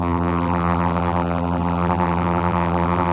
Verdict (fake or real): fake